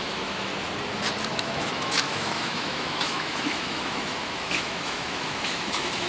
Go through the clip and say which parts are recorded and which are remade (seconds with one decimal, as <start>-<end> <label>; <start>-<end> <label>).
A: 0.0-0.5 remade; 0.5-1.3 recorded; 1.3-6.1 remade